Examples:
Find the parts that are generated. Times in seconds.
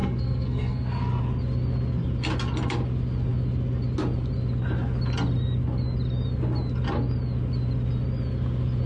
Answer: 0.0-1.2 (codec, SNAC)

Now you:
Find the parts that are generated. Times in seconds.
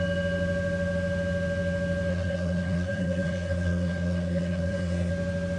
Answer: 2.1-5.1 (codec, SNAC)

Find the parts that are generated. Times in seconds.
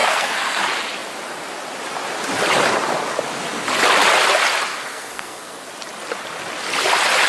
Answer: 0.0-0.6 (codec, SNAC); 4.7-5.7